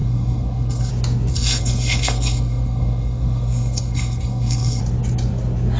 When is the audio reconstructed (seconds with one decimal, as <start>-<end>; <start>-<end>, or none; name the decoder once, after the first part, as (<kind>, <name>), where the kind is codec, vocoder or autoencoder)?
0.0-0.9 (codec, SNAC); 1.3-4.8